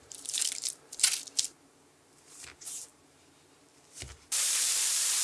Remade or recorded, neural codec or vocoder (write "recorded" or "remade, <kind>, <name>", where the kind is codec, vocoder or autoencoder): remade, vocoder, BigVGAN v2